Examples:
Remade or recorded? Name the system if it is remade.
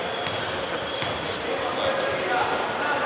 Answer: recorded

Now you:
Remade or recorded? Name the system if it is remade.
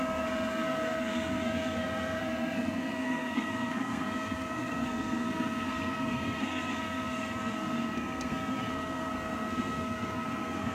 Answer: remade, codec, SNAC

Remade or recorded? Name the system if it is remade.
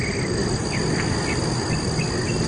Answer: recorded